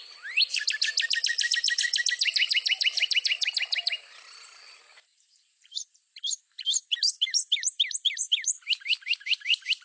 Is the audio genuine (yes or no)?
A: no